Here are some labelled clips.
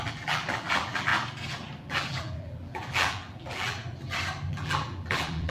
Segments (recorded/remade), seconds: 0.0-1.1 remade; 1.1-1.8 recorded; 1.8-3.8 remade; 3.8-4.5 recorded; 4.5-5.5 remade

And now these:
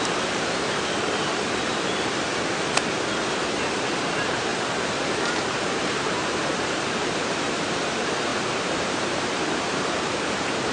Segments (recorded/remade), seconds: 0.0-2.3 remade; 2.3-4.0 recorded; 4.0-8.3 remade; 8.3-8.8 recorded; 8.8-10.7 remade

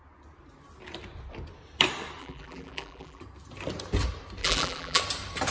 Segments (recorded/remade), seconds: 0.0-2.2 recorded; 2.2-3.2 remade; 3.2-4.4 recorded; 4.4-5.0 remade; 5.0-5.5 recorded

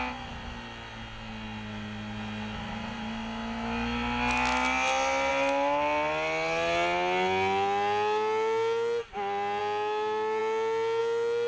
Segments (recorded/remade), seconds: 0.0-11.5 recorded

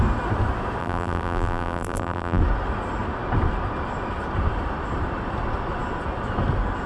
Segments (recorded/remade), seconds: 0.0-0.8 recorded; 0.8-2.4 remade; 2.4-6.9 recorded